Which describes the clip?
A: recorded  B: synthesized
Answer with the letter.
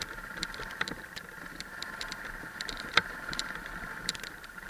B